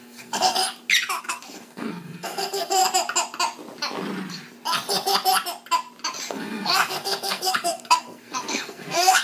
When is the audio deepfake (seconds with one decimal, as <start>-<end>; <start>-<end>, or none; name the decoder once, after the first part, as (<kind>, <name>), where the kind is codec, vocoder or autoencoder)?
0.0-0.6 (codec, SNAC); 1.2-2.8; 6.3-9.2